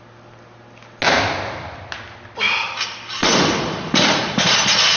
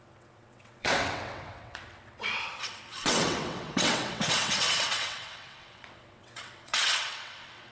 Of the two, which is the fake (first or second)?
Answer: second